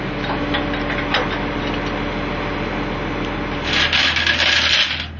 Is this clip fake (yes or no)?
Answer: no